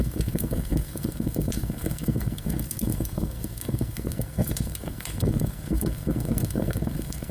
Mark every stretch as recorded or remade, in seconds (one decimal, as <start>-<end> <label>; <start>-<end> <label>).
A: 0.0-7.3 remade

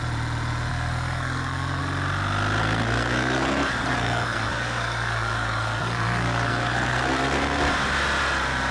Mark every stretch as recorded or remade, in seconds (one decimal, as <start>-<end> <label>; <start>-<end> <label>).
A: 0.0-0.7 recorded; 0.7-1.8 remade; 1.8-2.6 recorded; 2.6-7.6 remade; 7.6-8.7 recorded

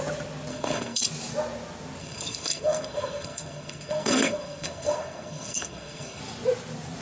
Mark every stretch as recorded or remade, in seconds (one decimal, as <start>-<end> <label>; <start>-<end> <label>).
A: 0.0-0.5 recorded; 0.5-1.0 remade; 1.0-2.0 recorded; 2.0-6.2 remade; 6.2-7.0 recorded

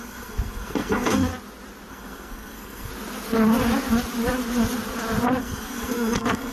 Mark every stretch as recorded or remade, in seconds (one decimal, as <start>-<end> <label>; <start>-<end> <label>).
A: 0.0-1.3 remade; 1.3-1.9 recorded; 1.9-2.9 remade; 2.9-5.4 recorded; 5.4-6.5 remade